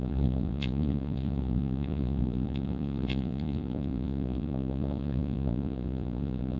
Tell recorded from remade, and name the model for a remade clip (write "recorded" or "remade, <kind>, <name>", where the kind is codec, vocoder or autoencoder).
remade, vocoder, Vocos